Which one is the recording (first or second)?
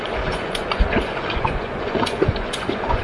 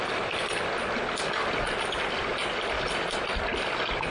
second